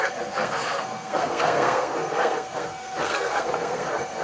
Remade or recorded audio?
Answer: remade